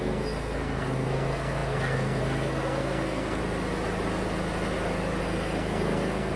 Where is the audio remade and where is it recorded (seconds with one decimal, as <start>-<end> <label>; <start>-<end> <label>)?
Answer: 0.0-3.4 remade; 3.4-5.2 recorded; 5.2-6.4 remade